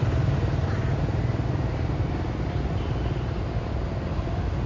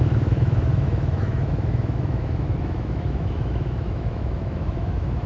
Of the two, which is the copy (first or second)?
second